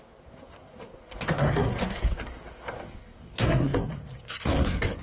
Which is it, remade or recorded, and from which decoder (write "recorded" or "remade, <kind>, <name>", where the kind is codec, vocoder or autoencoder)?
remade, codec, SNAC